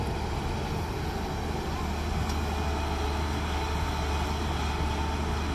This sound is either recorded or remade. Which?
recorded